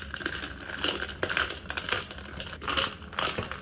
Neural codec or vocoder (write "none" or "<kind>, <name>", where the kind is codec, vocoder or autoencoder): none